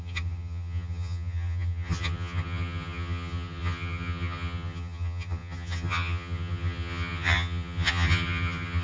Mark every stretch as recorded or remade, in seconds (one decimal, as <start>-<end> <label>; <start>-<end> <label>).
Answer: 0.0-8.8 remade